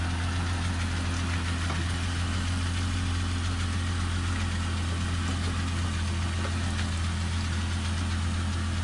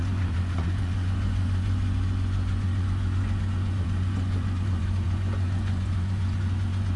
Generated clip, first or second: second